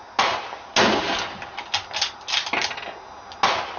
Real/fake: real